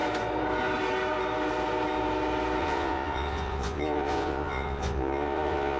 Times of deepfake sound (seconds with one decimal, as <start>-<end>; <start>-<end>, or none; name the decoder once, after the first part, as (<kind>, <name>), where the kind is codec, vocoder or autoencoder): 2.6-5.8 (vocoder, Vocos)